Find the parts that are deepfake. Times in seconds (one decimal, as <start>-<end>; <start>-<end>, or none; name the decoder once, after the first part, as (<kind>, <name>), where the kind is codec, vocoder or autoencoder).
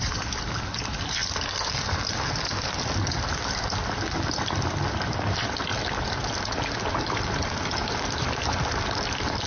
0.0-1.2 (vocoder, BigVGAN v2); 3.6-5.7; 6.9-9.5